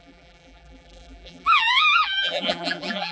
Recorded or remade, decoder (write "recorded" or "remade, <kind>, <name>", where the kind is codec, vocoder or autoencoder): remade, vocoder, BigVGAN v2